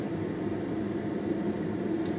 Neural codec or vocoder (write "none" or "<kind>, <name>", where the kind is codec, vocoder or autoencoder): none